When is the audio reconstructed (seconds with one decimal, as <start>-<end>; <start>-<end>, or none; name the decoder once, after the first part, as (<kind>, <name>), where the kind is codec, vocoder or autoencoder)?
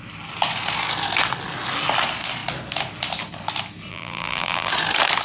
3.9-4.7 (vocoder, BigVGAN v2)